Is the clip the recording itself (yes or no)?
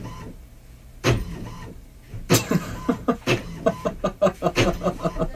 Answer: no